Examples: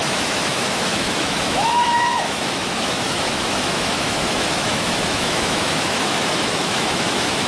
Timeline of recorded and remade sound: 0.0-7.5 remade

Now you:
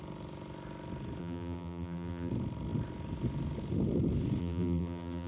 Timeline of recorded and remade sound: 0.0-1.2 recorded; 1.2-2.3 remade; 2.3-4.4 recorded; 4.4-5.3 remade

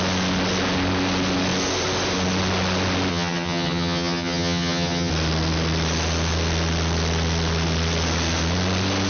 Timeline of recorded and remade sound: 0.0-3.1 recorded; 3.1-5.1 remade; 5.1-9.1 recorded